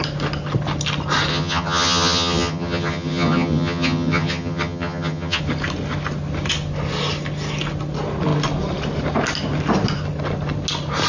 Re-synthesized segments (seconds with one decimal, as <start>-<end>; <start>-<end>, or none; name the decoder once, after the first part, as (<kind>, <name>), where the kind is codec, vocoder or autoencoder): 1.3-5.4 (vocoder, HiFi-GAN)